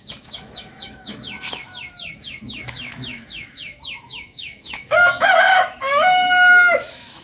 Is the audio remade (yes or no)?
yes